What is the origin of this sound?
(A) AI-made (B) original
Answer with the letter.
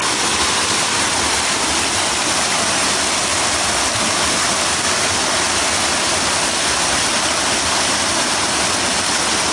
B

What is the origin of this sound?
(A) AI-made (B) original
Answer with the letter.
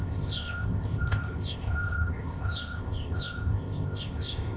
A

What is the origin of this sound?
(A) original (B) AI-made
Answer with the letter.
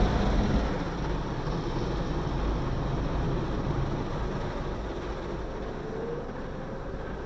A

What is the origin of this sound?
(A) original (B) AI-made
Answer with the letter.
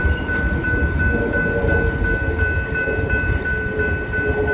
A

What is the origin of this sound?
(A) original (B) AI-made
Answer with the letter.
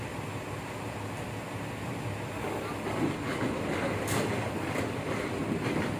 A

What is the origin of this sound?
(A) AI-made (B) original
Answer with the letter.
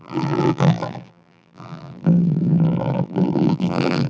A